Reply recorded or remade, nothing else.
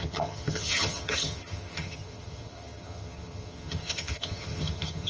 remade